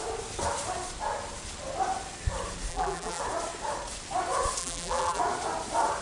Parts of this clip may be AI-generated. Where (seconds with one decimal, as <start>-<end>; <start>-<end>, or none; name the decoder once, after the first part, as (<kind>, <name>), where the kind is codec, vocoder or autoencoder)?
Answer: 2.7-3.2 (vocoder, BigVGAN v2); 4.6-5.2